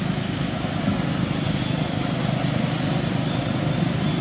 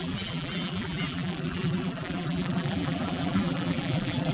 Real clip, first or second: first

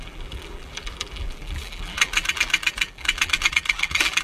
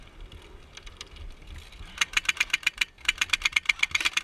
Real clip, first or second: second